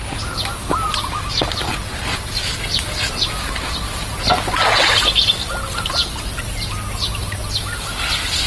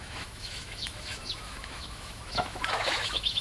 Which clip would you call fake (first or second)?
second